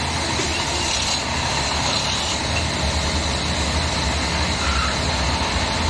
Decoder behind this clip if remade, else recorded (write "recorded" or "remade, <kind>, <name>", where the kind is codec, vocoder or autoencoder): recorded